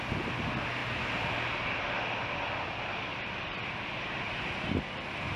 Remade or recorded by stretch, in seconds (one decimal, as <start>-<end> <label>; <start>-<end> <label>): 0.0-0.8 recorded; 0.8-1.8 remade; 1.8-5.4 recorded